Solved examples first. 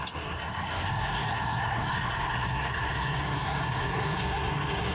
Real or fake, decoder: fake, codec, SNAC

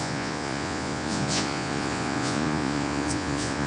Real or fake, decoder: fake, vocoder, Vocos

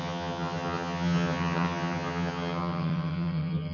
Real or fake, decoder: fake, vocoder, HiFi-GAN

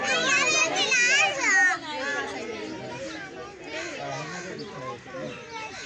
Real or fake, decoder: real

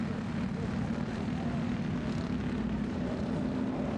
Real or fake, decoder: real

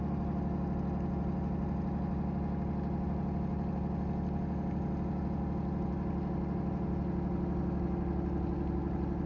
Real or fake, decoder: real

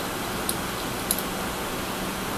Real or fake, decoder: real